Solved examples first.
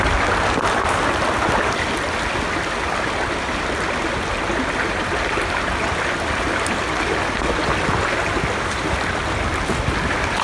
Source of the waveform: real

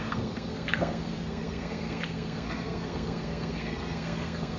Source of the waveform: fake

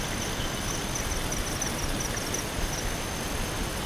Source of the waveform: real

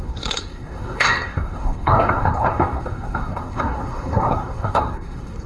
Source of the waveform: fake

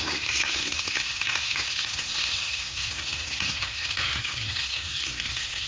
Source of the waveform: fake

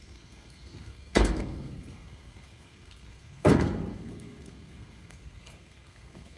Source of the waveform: fake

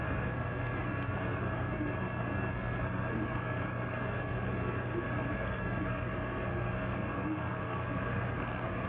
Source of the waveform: fake